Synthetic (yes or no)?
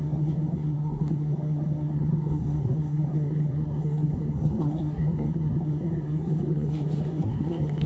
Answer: yes